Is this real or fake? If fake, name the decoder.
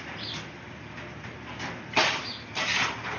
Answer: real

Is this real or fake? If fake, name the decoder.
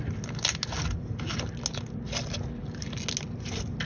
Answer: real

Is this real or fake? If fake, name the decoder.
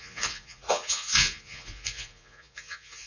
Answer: fake, vocoder, Vocos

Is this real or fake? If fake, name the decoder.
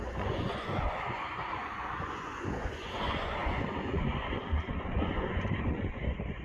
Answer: fake, vocoder, Vocos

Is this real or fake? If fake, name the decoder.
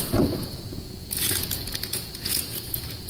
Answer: fake, vocoder, Vocos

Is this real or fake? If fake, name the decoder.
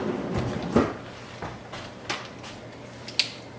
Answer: real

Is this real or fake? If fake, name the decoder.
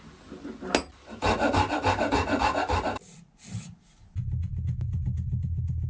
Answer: real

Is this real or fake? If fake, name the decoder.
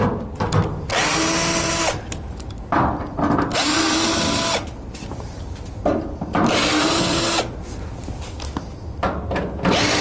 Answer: real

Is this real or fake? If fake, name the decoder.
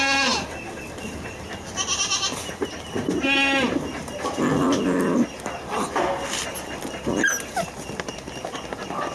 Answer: real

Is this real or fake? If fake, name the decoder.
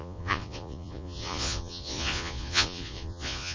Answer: fake, vocoder, Vocos